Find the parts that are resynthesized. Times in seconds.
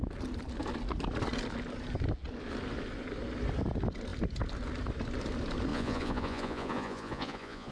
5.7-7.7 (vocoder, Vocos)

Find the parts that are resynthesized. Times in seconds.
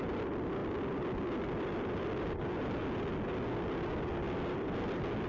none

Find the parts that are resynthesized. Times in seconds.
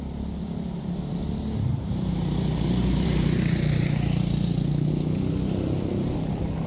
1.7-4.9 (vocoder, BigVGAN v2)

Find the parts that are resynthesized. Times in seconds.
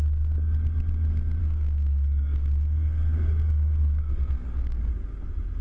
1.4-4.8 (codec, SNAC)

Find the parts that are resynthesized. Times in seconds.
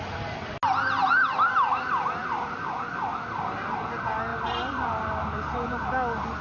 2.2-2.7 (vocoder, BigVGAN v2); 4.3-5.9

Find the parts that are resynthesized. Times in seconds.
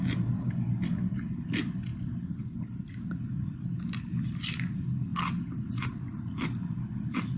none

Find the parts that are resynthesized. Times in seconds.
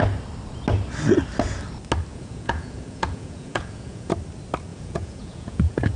2.1-4.1 (vocoder, Vocos); 4.7-6.0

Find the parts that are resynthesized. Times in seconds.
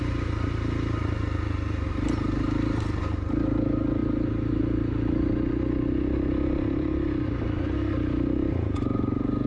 none